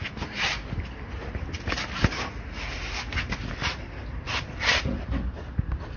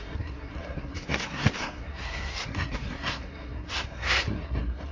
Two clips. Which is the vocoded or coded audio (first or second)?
second